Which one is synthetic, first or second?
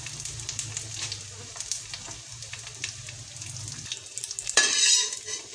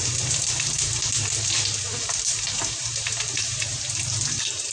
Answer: second